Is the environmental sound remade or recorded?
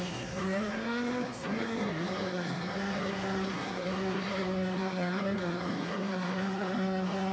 remade